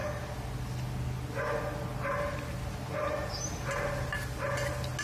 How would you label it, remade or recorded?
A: recorded